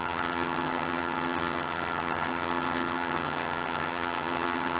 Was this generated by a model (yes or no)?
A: yes